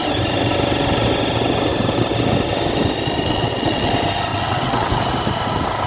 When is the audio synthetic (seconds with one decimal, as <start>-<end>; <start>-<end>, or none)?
3.3-3.9; 4.3-5.0